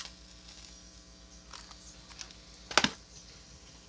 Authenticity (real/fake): real